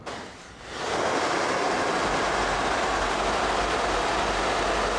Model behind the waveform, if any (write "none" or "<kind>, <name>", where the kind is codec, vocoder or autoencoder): none